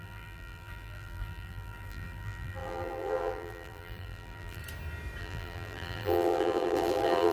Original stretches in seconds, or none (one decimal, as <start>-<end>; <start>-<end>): 4.6-5.2